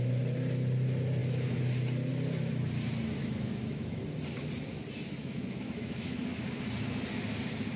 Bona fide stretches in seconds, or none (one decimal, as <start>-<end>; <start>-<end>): 0.0-3.2; 4.0-5.2; 6.2-7.8